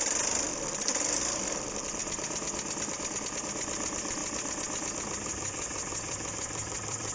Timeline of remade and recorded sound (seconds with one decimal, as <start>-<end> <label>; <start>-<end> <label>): 0.0-0.5 remade; 0.5-1.2 recorded; 1.2-2.0 remade; 2.0-3.2 recorded; 3.2-7.1 remade